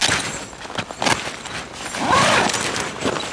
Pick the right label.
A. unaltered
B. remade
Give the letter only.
A